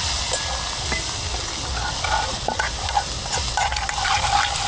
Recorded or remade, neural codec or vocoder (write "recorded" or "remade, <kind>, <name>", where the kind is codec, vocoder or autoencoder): recorded